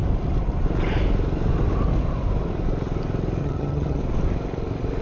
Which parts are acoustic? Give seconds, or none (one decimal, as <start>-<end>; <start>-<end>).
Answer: 0.0-3.4; 4.0-5.0

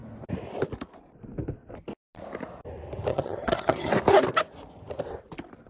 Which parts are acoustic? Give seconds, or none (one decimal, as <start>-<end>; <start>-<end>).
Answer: 0.0-3.1; 3.9-5.7

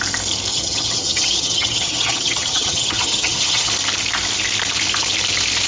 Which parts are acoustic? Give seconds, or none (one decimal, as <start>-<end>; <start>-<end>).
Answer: 0.0-0.5; 3.7-5.7

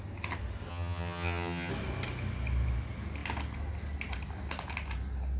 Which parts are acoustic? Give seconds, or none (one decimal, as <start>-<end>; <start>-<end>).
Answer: 0.0-0.7; 1.7-5.4

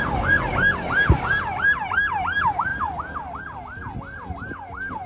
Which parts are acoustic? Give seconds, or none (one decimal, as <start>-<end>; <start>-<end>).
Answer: 0.0-5.1

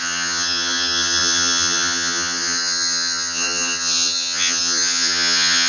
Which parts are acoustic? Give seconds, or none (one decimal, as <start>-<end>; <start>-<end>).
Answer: none

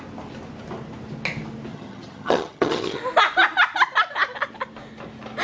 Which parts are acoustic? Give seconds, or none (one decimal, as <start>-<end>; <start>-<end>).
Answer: 0.0-1.7; 3.0-5.4